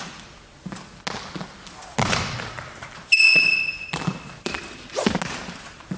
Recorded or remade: recorded